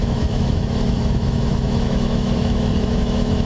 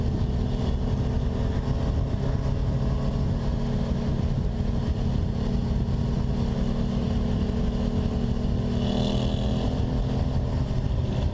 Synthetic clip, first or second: first